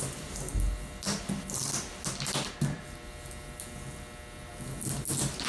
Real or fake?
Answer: real